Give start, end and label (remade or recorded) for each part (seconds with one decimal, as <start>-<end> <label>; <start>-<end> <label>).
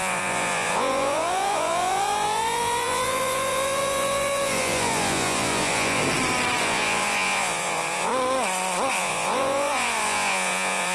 0.0-6.0 remade; 6.0-6.6 recorded; 6.6-8.1 remade; 8.1-8.9 recorded; 8.9-10.9 remade